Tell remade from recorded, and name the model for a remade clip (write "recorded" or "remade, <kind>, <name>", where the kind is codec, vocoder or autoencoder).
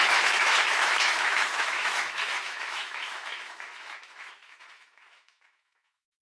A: remade, autoencoder, DAC-VAE